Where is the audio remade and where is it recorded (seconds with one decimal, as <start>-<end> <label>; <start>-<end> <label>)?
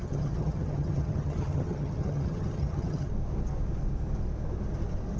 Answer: 0.0-3.1 remade; 3.1-5.2 recorded